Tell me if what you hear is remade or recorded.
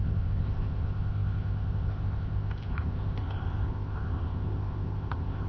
remade